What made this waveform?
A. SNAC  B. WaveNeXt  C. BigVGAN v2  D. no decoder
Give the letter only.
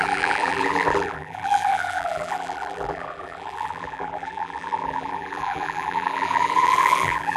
C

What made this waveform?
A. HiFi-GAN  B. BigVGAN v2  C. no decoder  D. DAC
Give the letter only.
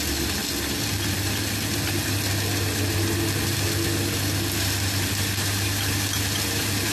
B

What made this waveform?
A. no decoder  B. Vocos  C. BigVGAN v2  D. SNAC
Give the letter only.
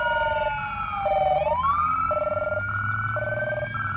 A